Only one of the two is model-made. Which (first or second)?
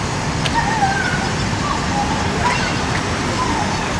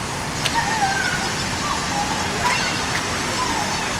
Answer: first